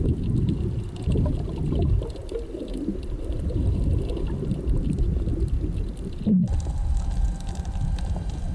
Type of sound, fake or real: real